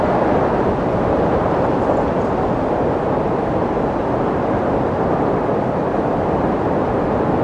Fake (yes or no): no